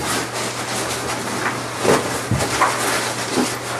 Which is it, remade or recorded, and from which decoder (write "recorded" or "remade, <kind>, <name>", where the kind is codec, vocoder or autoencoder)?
recorded